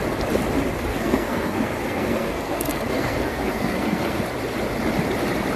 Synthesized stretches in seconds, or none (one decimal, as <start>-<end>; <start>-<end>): 0.9-4.2